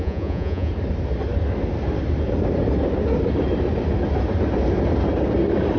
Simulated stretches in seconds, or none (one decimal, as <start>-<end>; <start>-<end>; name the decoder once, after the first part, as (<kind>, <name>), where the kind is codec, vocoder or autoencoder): 0.0-0.7 (vocoder, Vocos)